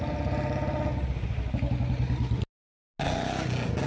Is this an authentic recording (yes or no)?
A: yes